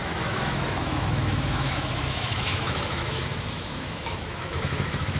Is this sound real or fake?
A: fake